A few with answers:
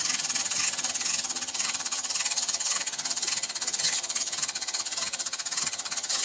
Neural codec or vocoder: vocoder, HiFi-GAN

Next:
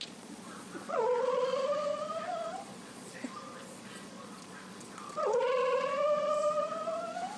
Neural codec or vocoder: vocoder, Vocos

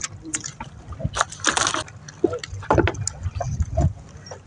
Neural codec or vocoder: none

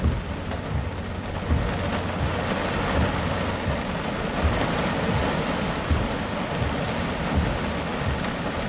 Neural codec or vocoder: none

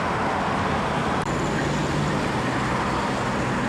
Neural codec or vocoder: none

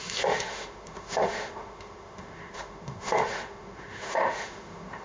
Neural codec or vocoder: autoencoder, DAC-VAE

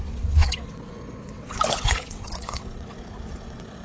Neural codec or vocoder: vocoder, WaveNeXt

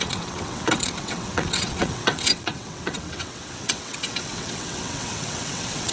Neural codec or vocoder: vocoder, WaveNeXt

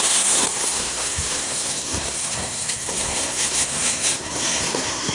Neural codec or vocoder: codec, SNAC